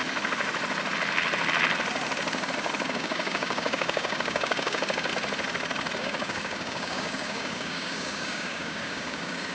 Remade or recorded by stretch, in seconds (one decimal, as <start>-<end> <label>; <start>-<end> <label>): 0.0-2.9 recorded; 2.9-5.1 remade; 5.1-6.0 recorded; 6.0-9.5 remade